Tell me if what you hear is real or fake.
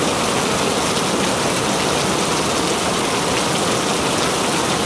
real